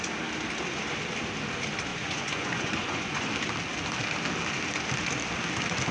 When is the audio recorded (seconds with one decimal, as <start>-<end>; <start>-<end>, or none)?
0.0-1.9; 3.3-5.9